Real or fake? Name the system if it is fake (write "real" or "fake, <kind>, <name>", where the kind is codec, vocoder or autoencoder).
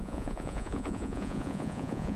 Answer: fake, vocoder, Vocos